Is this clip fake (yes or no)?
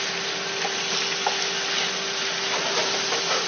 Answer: no